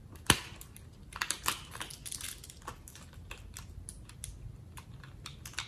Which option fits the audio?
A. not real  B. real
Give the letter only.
B